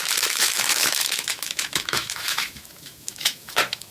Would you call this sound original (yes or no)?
no